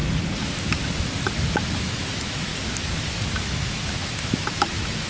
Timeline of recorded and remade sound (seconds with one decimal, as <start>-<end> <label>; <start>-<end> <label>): 0.0-1.8 recorded; 1.8-2.5 remade; 2.5-3.4 recorded; 3.4-5.1 remade